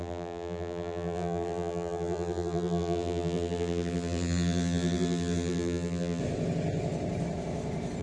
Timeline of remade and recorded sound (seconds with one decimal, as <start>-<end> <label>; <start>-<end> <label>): 0.0-6.2 remade; 6.2-8.0 recorded